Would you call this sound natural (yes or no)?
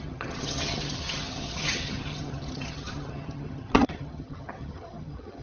no